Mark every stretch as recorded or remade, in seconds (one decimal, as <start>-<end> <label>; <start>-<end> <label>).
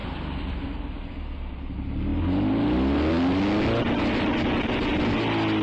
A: 0.0-1.1 remade; 1.1-5.6 recorded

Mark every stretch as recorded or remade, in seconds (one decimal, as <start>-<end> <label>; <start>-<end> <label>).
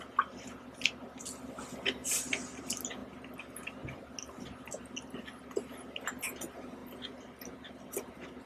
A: 0.0-8.5 recorded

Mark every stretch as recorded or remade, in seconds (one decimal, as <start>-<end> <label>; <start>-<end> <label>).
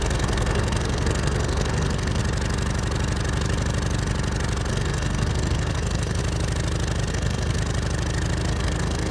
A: 0.0-2.2 remade; 2.2-4.7 recorded; 4.7-6.2 remade; 6.2-7.1 recorded; 7.1-7.6 remade; 7.6-8.5 recorded; 8.5-9.1 remade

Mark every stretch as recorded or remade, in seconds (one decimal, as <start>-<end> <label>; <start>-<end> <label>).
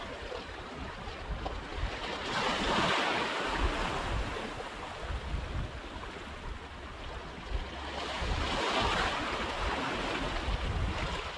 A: 0.0-11.4 recorded